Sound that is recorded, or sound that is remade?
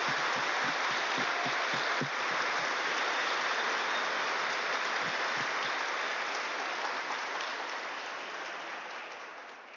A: recorded